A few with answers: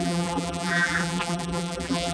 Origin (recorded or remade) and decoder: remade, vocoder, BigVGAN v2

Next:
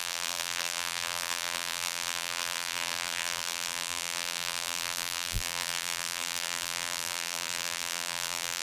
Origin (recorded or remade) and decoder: remade, vocoder, BigVGAN v2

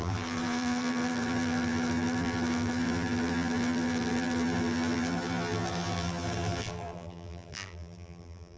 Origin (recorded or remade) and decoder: remade, vocoder, BigVGAN v2